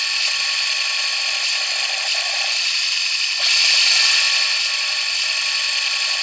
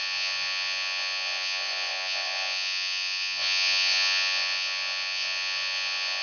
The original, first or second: first